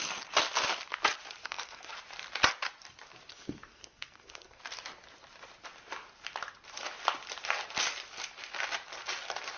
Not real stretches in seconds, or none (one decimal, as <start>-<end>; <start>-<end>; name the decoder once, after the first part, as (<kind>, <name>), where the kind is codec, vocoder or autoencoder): 1.4-1.9 (codec, SNAC); 3.3-4.6